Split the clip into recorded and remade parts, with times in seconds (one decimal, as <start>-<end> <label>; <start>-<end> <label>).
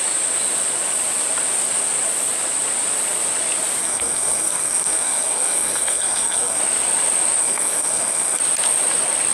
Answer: 0.0-3.8 recorded; 3.8-6.6 remade; 6.6-7.4 recorded; 7.4-8.4 remade; 8.4-9.3 recorded